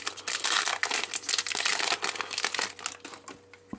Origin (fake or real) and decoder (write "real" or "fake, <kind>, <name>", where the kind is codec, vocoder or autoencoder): real